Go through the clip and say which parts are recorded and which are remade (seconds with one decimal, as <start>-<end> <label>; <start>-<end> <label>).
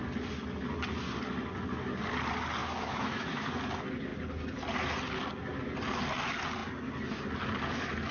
0.0-2.6 recorded; 2.6-3.5 remade; 3.5-8.1 recorded